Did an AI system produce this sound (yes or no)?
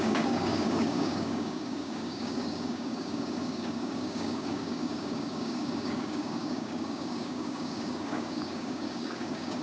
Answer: yes